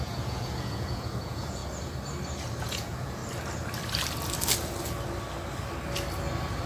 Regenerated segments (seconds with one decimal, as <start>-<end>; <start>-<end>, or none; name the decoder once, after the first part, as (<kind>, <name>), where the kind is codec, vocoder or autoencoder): 0.0-1.6 (vocoder, Vocos); 2.6-3.2